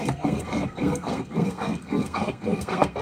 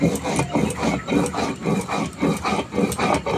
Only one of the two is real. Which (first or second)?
second